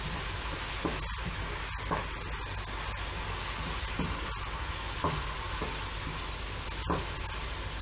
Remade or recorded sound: recorded